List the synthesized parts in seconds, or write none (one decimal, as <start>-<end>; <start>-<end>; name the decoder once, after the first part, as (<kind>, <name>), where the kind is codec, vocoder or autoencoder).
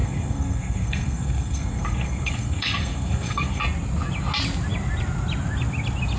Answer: 0.0-3.6 (codec, SNAC)